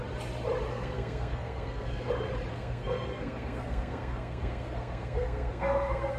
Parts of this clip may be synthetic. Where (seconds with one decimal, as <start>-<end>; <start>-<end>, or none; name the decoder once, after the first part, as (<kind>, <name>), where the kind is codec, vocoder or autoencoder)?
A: 0.7-2.1 (codec, SNAC); 2.5-6.2